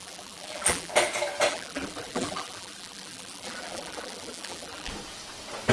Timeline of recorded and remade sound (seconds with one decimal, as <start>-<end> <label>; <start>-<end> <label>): 0.0-0.9 remade; 0.9-1.5 recorded; 1.5-4.9 remade; 4.9-5.7 recorded